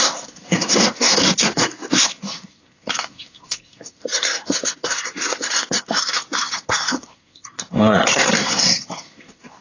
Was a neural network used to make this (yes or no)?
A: yes